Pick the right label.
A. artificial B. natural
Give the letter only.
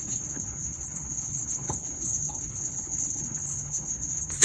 A